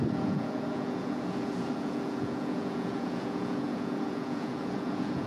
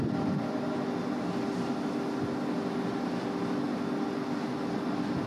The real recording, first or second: second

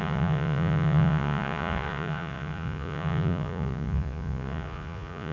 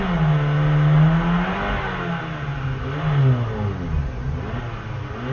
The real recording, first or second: second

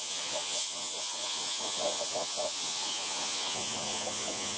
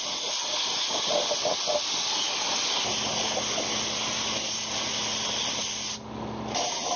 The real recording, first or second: second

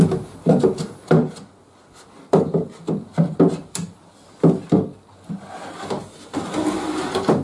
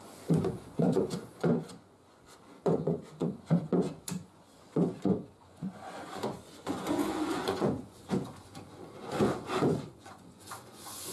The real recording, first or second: first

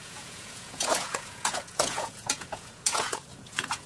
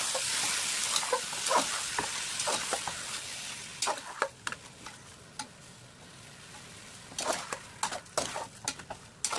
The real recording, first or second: second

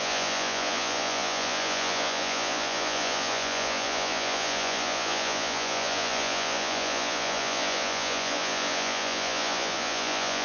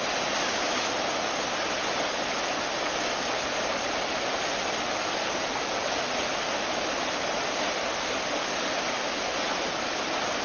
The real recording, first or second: second